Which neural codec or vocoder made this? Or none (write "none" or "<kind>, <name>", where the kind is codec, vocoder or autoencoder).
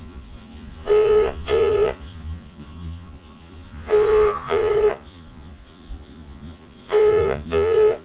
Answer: vocoder, Vocos